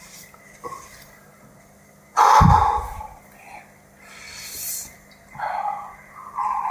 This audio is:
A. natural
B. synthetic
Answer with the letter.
A